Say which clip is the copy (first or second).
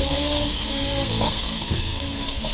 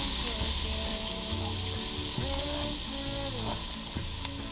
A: first